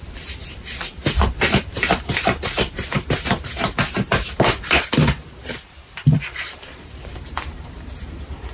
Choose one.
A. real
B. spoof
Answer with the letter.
B